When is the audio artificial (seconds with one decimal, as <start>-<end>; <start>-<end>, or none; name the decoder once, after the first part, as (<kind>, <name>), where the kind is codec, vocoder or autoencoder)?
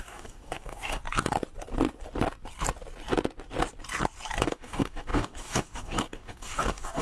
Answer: 0.0-1.0 (codec, DAC); 4.4-7.0